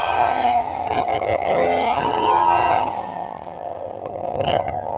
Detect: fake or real fake